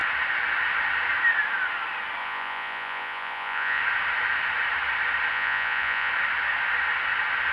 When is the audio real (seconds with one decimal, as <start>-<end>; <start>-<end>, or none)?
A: 0.0-2.2; 3.8-5.3; 6.1-7.5